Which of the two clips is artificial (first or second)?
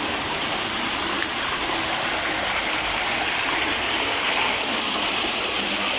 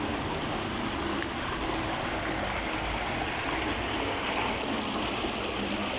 first